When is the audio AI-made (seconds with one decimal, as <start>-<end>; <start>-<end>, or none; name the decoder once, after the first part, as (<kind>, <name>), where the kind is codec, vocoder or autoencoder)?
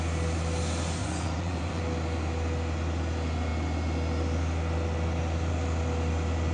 1.0-1.8 (vocoder, Vocos)